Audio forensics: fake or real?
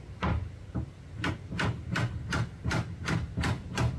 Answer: real